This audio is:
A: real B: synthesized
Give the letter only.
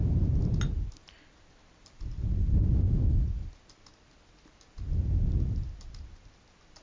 A